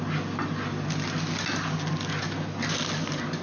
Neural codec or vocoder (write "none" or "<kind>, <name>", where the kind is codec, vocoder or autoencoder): none